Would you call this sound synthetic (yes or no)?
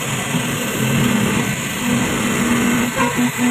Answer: no